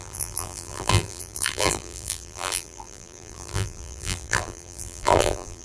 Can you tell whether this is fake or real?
fake